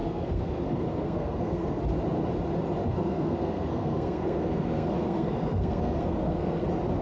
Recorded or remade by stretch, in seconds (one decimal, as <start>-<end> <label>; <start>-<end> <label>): 0.0-1.8 remade; 1.8-2.8 recorded; 2.8-6.6 remade; 6.6-7.0 recorded